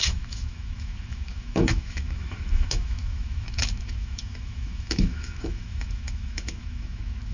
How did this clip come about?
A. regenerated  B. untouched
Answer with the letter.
A